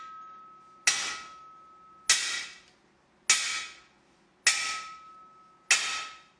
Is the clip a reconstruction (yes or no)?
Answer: no